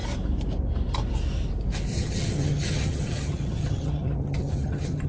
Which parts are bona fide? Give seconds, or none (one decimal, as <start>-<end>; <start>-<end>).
0.0-1.9